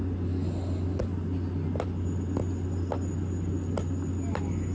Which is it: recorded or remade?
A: recorded